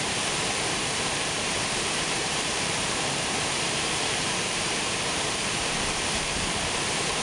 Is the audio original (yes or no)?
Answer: no